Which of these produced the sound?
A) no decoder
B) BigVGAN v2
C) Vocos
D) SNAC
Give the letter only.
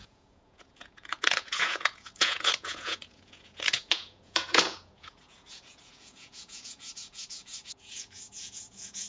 C